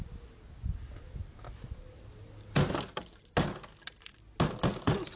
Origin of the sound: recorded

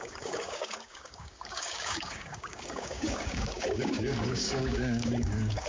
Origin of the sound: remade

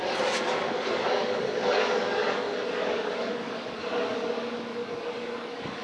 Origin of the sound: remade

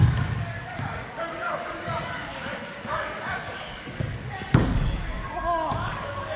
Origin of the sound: remade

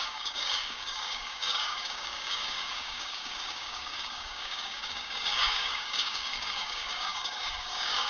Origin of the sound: remade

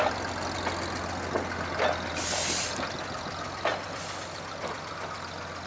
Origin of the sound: recorded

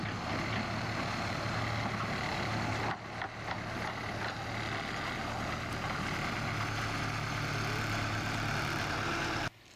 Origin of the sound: recorded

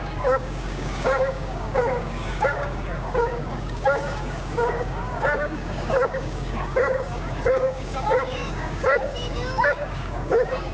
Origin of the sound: remade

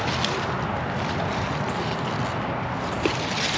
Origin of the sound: recorded